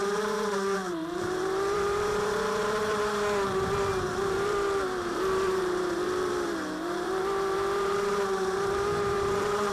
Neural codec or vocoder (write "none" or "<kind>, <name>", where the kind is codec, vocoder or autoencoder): vocoder, BigVGAN v2